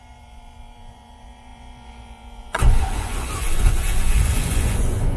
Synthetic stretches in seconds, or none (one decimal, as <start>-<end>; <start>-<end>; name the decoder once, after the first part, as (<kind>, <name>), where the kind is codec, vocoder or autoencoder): 0.0-5.2 (vocoder, Vocos)